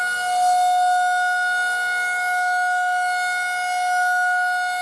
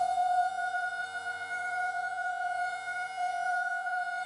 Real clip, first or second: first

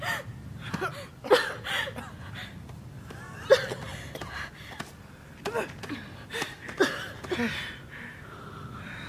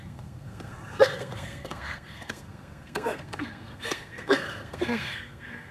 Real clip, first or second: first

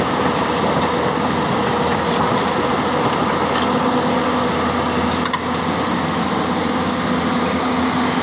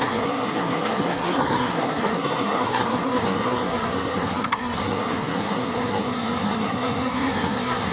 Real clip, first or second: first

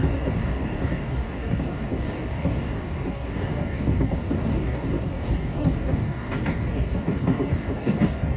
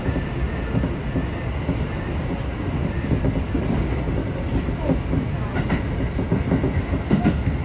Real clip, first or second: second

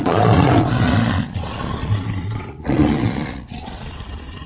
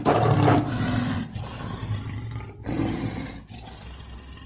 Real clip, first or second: second